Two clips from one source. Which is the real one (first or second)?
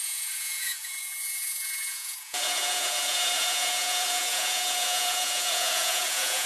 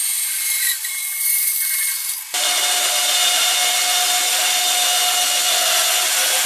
second